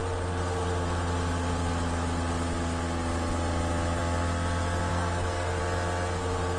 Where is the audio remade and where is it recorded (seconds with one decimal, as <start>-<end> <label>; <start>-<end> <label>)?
0.0-4.9 recorded; 4.9-5.6 remade; 5.6-6.6 recorded